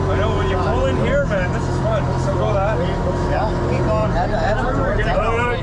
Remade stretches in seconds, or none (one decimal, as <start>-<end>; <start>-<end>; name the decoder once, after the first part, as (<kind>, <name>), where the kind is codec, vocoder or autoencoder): 2.3-3.1 (vocoder, BigVGAN v2); 4.0-5.6